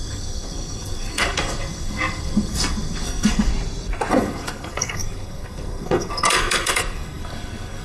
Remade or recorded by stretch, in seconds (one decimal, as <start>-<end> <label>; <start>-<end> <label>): 0.0-3.5 remade; 3.5-4.1 recorded; 4.1-7.8 remade